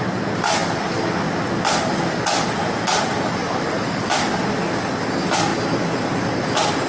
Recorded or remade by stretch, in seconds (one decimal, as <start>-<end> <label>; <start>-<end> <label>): 0.0-3.4 recorded; 3.4-3.9 remade; 3.9-6.9 recorded